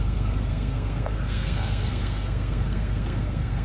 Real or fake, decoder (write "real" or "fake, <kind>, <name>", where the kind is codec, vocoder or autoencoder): fake, codec, SNAC